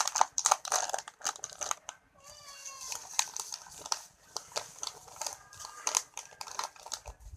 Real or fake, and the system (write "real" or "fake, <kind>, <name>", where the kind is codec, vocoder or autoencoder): fake, vocoder, BigVGAN v2